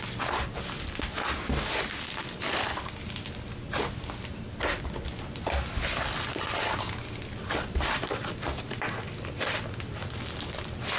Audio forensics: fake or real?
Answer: real